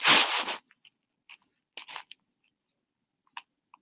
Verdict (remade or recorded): recorded